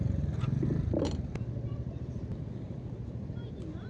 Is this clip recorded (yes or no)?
yes